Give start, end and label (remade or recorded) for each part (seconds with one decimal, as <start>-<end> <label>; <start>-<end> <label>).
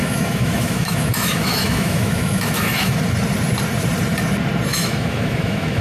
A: 0.0-3.0 remade; 3.0-4.7 recorded; 4.7-5.8 remade